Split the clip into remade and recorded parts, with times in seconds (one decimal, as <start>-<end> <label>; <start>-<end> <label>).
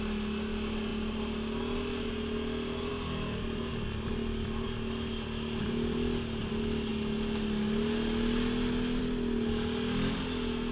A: 0.0-10.7 recorded